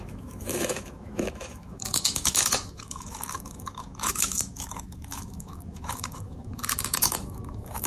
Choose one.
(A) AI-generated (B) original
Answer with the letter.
A